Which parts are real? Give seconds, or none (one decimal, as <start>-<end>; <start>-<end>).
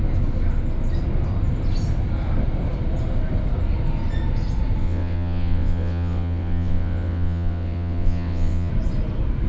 0.0-4.8; 8.7-9.5